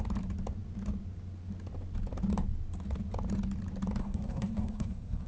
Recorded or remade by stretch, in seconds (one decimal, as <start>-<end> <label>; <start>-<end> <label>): 0.0-4.0 recorded; 4.0-5.3 remade